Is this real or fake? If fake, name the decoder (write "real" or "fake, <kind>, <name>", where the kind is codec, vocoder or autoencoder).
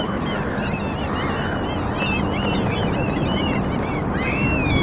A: real